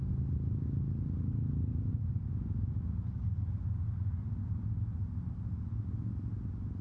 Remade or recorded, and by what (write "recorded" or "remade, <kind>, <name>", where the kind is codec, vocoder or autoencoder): recorded